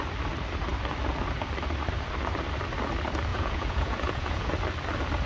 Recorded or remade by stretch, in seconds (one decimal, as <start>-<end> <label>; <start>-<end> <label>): 0.0-3.3 recorded; 3.3-4.5 remade; 4.5-5.3 recorded